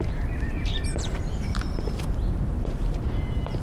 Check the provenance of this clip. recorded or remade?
remade